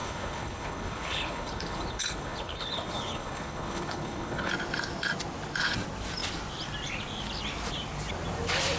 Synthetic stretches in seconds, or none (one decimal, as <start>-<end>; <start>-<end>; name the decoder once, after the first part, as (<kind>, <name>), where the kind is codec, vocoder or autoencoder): 0.0-4.5 (codec, HILCodec)